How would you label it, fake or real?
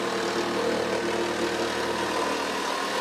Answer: real